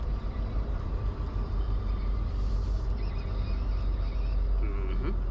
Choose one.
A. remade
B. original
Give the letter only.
B